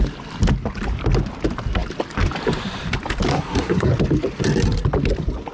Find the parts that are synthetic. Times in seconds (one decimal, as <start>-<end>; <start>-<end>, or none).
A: 3.3-3.9